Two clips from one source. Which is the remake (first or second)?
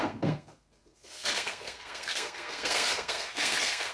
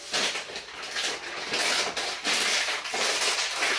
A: first